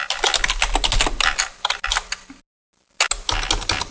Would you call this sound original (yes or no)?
yes